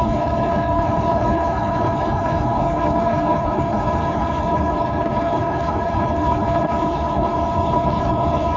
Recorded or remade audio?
remade